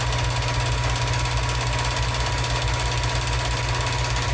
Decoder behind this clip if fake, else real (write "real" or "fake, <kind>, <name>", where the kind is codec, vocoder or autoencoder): real